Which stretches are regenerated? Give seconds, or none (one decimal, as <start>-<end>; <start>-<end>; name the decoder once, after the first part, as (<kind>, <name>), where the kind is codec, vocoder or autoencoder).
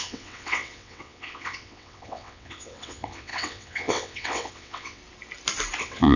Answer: 0.0-5.0 (vocoder, WaveNeXt); 5.8-6.2